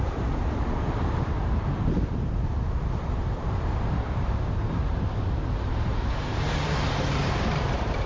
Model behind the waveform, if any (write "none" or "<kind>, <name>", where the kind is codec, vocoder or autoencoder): vocoder, BigVGAN v2